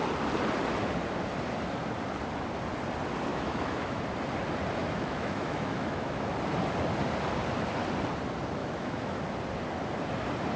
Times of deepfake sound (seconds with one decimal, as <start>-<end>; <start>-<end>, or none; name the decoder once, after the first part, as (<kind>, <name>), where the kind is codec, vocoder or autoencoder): 3.3-4.0 (autoencoder, DAC-VAE); 4.8-6.3; 8.6-9.2

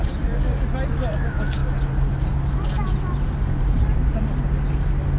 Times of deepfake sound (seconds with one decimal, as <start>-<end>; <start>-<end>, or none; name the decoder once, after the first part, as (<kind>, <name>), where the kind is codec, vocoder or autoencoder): none

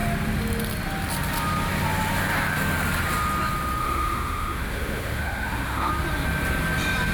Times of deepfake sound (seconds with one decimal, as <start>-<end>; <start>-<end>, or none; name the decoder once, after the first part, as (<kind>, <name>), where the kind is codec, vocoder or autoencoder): 3.8-5.9 (autoencoder, DAC-VAE)

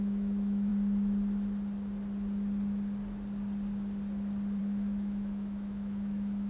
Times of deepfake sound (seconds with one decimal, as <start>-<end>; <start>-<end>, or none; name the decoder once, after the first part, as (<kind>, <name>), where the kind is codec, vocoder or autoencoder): 0.0-0.7 (autoencoder, DAC-VAE); 4.6-6.5

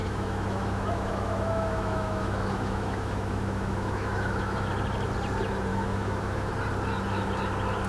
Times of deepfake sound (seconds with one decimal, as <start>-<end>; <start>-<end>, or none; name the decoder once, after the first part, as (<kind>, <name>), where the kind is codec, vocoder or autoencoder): 0.0-4.7 (autoencoder, DAC-VAE); 5.7-6.5

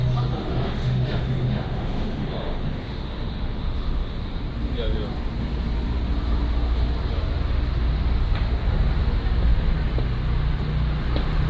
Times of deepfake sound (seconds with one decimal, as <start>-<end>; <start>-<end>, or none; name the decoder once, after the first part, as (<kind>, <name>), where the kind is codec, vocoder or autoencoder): 0.4-4.3 (autoencoder, DAC-VAE)